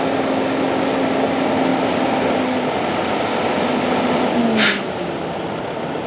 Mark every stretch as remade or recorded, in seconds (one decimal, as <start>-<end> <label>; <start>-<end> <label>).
0.0-6.1 recorded